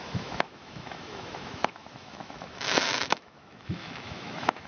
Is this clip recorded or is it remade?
remade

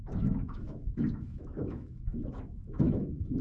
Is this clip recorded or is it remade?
remade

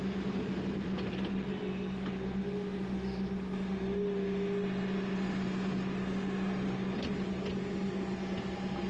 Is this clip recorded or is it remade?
recorded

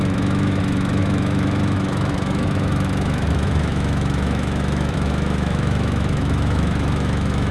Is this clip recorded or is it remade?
remade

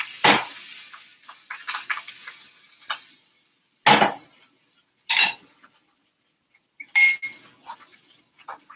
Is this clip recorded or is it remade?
recorded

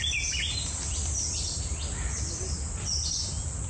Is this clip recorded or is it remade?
recorded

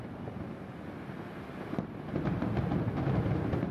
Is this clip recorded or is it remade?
recorded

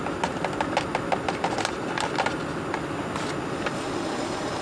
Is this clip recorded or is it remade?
recorded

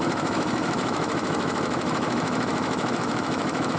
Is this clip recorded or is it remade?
remade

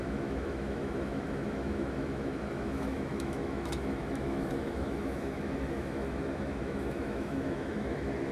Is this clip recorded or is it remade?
remade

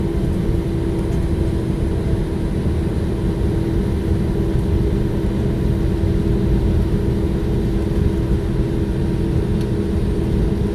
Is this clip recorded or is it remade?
recorded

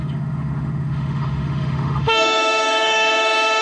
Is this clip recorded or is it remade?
remade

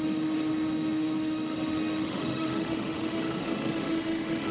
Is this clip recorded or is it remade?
remade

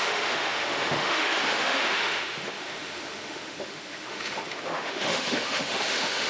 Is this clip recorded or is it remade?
remade